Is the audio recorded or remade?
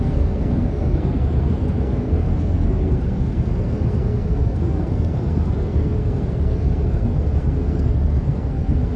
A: remade